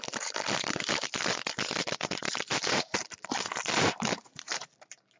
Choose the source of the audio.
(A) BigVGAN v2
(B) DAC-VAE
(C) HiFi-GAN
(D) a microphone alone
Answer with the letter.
A